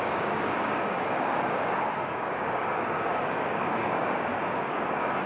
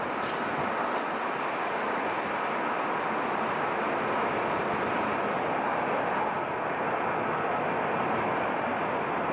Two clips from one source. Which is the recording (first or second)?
second